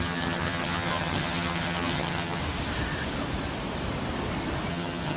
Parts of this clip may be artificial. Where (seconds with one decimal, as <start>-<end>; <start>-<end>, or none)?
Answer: 0.0-2.4; 4.7-5.2